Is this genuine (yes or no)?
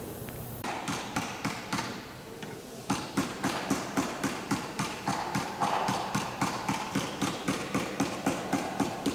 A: no